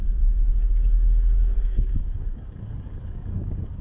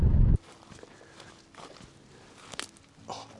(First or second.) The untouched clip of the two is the second